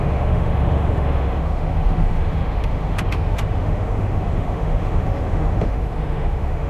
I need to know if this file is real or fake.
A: fake